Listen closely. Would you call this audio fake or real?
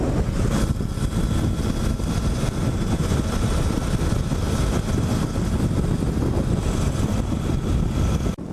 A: real